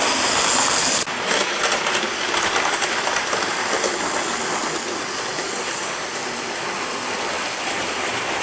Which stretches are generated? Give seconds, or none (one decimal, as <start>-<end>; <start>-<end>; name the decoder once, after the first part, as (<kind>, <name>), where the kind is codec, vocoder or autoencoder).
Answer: 6.2-8.4 (vocoder, BigVGAN v2)